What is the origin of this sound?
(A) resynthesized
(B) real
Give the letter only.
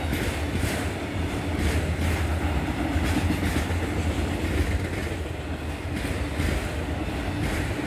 B